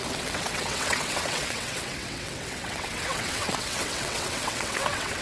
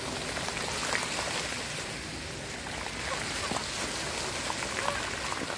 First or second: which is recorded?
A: second